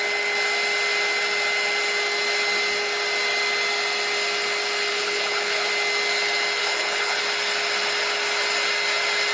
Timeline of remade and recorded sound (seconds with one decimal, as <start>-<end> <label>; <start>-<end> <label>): 0.0-4.9 recorded; 4.9-5.7 remade; 5.7-6.6 recorded; 6.6-7.2 remade; 7.2-9.3 recorded